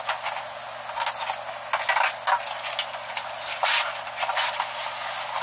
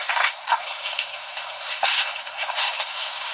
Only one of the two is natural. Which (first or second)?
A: first